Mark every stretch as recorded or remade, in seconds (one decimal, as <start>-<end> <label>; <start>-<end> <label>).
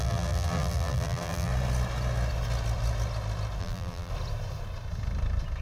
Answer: 0.0-1.5 remade; 1.5-3.6 recorded; 3.6-4.1 remade; 4.1-5.6 recorded